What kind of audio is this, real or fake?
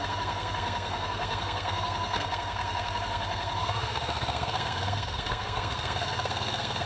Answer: fake